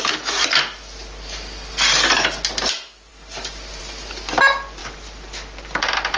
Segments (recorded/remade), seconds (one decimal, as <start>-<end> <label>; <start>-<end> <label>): 0.0-3.1 recorded; 3.1-3.8 remade; 3.8-4.8 recorded; 4.8-6.2 remade